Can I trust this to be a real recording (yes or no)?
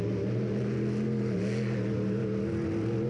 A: yes